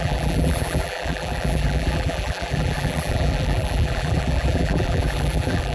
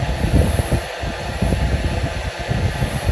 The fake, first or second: first